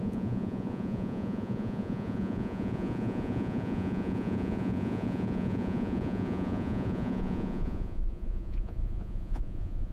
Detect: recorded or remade remade